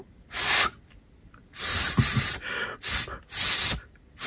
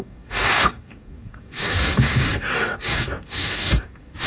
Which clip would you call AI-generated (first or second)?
second